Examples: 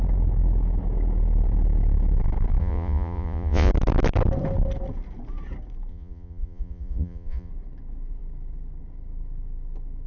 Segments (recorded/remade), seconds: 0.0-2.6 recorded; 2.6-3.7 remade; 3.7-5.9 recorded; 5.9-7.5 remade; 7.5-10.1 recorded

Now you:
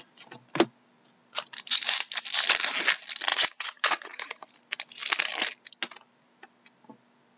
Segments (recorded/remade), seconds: 0.0-3.3 recorded; 3.3-4.5 remade; 4.5-7.4 recorded

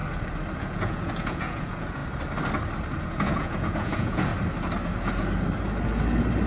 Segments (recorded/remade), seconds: 0.0-0.6 recorded; 0.6-2.0 remade; 2.0-3.0 recorded; 3.0-4.3 remade; 4.3-6.5 recorded

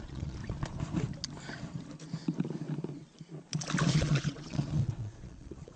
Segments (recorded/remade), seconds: 0.0-0.4 remade; 0.4-3.9 recorded; 3.9-5.8 remade

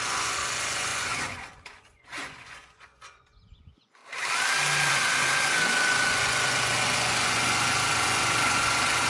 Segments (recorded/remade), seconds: 0.0-4.0 remade; 4.0-4.9 recorded; 4.9-9.1 remade

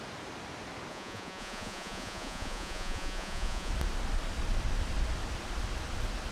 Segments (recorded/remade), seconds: 0.0-0.9 recorded; 0.9-3.7 remade; 3.7-6.3 recorded